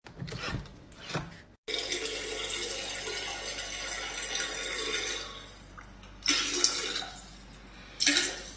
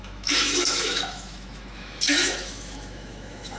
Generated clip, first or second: second